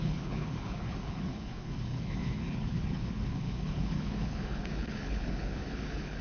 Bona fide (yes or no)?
no